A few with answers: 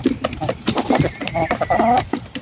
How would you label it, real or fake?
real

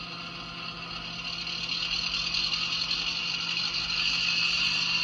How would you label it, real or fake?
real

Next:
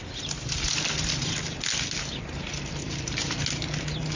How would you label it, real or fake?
real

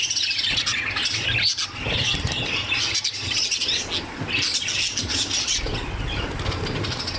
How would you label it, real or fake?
real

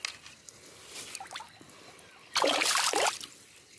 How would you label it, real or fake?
real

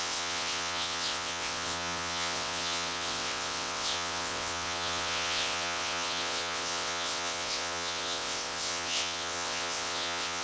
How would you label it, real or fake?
fake